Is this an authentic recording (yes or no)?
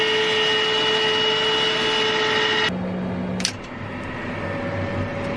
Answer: yes